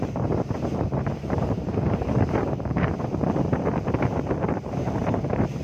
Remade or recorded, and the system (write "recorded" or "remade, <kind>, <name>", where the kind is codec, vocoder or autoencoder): remade, vocoder, BigVGAN v2